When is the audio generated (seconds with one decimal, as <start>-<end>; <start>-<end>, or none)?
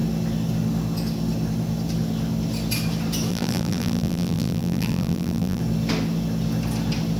3.3-5.6